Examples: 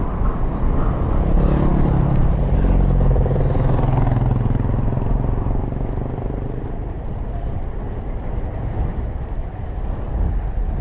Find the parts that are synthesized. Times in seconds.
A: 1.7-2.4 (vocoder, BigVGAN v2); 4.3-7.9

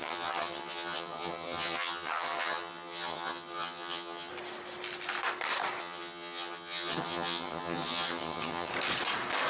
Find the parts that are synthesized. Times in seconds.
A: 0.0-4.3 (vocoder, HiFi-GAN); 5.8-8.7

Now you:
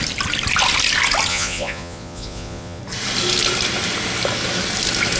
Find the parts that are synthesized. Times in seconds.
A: 1.3-2.8 (vocoder, Vocos)